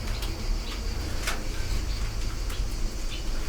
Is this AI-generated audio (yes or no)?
no